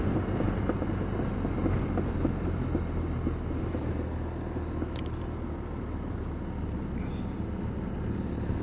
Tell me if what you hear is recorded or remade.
recorded